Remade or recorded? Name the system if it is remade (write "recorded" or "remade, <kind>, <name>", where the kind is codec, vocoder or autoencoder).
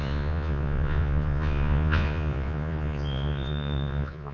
remade, vocoder, Vocos